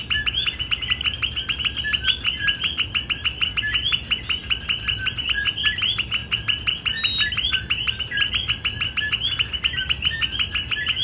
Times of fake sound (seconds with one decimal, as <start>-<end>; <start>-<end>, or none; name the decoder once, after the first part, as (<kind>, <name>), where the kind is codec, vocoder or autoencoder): none